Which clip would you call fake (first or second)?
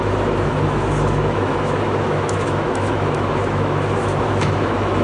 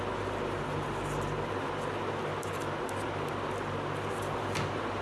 first